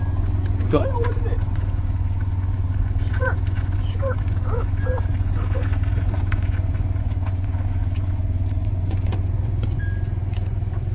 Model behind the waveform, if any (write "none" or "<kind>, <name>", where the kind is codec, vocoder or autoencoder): vocoder, Vocos